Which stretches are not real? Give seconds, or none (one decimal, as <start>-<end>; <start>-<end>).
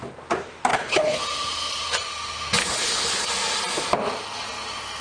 0.7-1.2; 2.6-3.3